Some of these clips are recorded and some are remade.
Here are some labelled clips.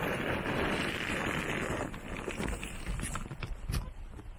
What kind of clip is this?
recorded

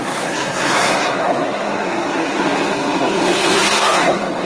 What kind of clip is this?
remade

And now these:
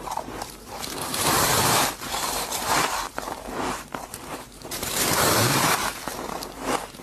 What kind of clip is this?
remade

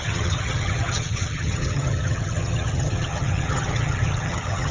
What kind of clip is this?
remade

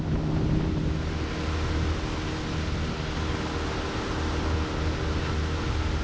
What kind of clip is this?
recorded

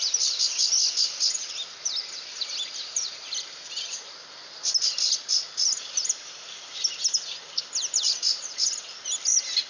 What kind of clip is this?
recorded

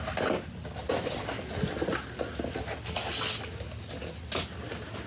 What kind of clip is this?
recorded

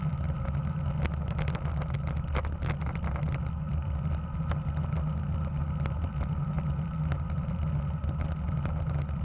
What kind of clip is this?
recorded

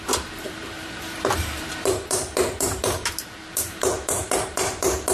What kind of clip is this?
remade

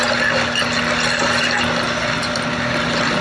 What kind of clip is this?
recorded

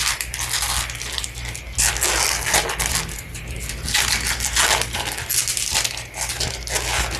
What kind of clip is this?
recorded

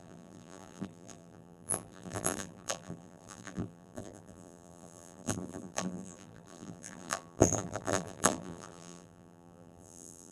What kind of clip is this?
remade